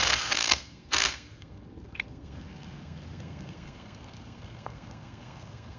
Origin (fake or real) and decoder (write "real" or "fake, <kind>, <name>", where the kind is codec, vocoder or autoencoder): fake, codec, SNAC